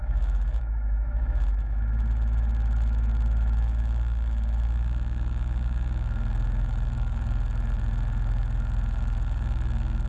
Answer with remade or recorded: remade